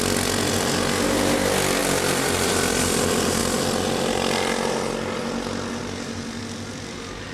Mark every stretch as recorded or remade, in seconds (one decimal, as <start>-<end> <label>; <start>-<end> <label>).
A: 0.0-1.8 recorded; 1.8-2.5 remade; 2.5-5.8 recorded; 5.8-6.4 remade; 6.4-7.3 recorded